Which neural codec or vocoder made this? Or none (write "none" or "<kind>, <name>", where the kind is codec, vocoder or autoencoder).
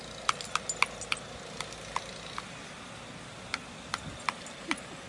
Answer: none